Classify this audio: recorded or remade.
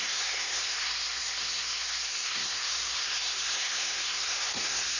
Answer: remade